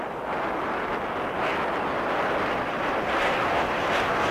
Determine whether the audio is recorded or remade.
recorded